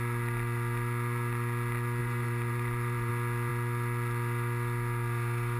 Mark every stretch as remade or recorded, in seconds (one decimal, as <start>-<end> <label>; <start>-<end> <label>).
0.0-2.0 recorded; 2.0-3.1 remade; 3.1-5.6 recorded